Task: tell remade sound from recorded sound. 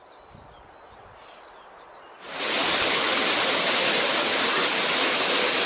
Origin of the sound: recorded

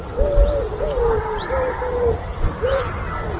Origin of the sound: recorded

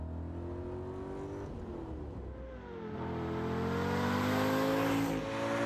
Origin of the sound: recorded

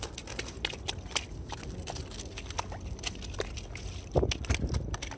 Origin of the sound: recorded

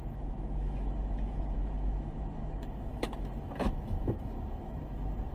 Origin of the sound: remade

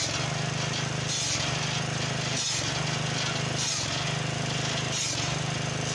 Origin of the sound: recorded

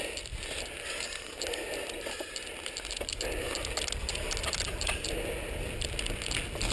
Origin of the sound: recorded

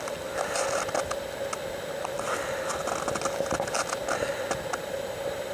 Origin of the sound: recorded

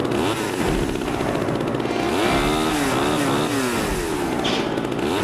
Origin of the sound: recorded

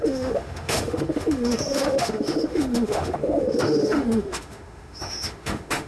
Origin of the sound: remade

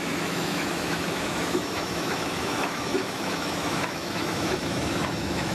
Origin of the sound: remade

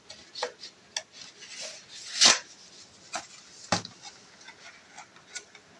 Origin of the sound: recorded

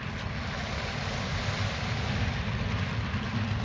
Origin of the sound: recorded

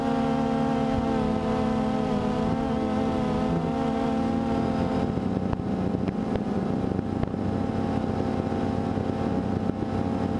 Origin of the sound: recorded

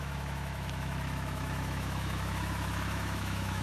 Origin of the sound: remade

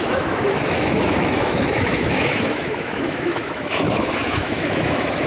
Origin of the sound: remade